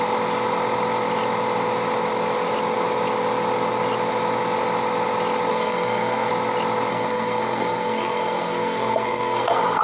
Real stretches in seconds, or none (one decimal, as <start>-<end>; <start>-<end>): 0.0-5.5; 6.3-6.9

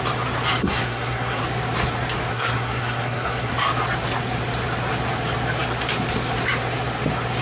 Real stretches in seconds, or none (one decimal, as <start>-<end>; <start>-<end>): 0.0-0.6; 1.4-2.3; 3.5-7.4

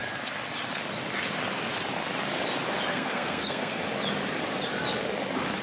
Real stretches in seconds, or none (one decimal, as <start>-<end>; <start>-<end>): 0.0-2.9; 3.8-5.6

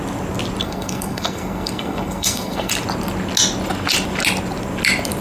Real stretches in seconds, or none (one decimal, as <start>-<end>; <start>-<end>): 0.0-0.6; 2.7-5.2